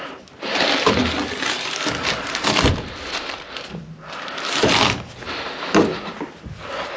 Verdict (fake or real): real